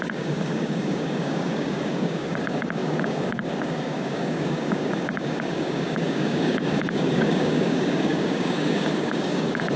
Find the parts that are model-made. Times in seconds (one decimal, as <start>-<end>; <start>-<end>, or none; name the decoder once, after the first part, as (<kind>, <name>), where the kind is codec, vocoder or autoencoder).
0.0-9.8 (codec, DAC)